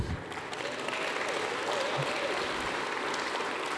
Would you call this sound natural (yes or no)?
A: yes